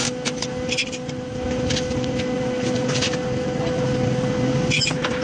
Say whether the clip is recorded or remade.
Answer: recorded